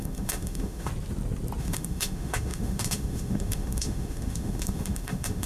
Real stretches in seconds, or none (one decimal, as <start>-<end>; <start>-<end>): 0.9-1.6